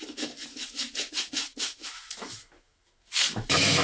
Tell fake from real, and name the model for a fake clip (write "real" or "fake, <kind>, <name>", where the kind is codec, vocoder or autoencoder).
fake, autoencoder, DAC-VAE